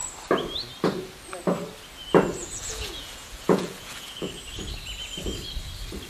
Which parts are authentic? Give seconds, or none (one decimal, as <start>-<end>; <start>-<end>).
0.0-2.4; 4.3-6.1